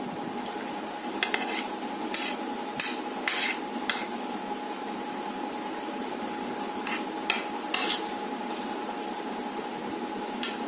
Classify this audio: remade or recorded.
recorded